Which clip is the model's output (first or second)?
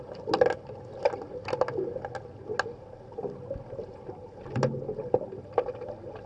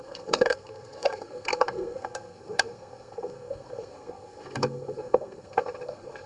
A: second